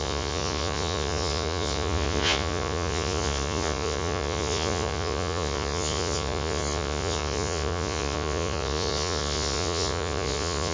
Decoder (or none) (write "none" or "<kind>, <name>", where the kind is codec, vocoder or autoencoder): vocoder, Vocos